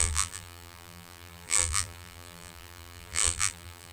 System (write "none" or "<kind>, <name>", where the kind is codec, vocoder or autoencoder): vocoder, BigVGAN v2